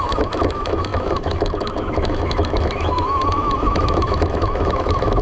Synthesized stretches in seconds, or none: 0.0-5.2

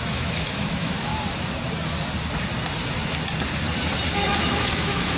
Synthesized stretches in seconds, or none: 0.0-1.1; 4.1-5.2

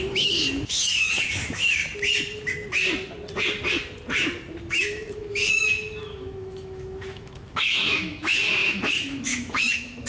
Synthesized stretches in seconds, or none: 0.0-1.8; 4.7-10.1

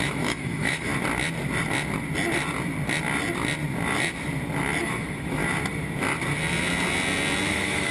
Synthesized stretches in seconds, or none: 0.0-0.9; 4.8-5.4; 7.5-7.9

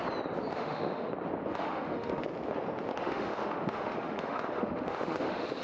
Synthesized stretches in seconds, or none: 0.5-1.1; 1.5-2.2; 2.9-5.6

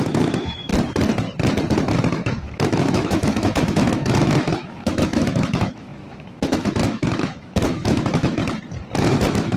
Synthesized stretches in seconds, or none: 0.0-0.7; 2.1-8.4; 9.0-9.6

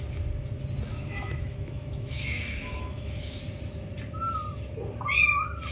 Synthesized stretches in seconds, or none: 0.9-3.4

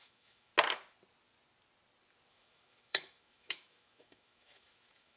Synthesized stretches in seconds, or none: 0.0-0.5; 2.3-5.2